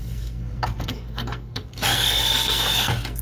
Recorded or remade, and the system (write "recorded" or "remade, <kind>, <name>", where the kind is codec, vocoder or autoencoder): remade, codec, SNAC